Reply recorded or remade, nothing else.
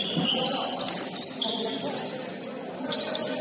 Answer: recorded